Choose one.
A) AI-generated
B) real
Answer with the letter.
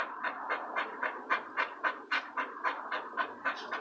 B